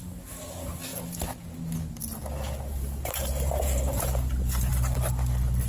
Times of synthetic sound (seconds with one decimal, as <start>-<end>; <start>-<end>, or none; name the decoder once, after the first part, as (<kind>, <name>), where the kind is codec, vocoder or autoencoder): 2.8-4.7 (vocoder, BigVGAN v2)